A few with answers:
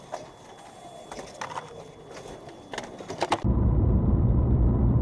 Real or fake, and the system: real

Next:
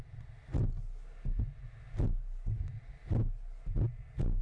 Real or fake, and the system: real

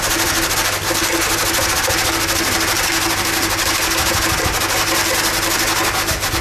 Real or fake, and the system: real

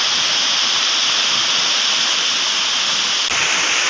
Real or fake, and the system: real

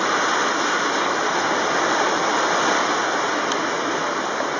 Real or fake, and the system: fake, vocoder, BigVGAN v2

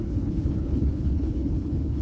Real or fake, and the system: fake, codec, HILCodec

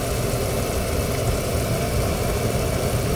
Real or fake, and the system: real